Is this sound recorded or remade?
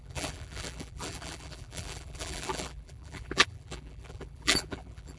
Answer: remade